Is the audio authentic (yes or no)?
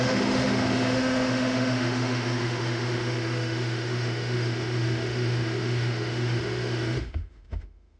no